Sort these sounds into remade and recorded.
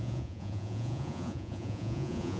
remade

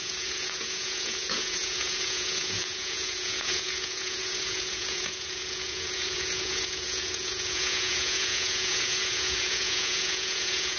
remade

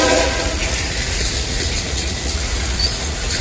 remade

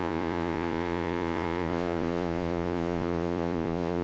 remade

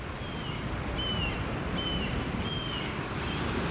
recorded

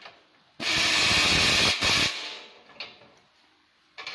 recorded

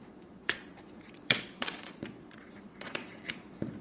remade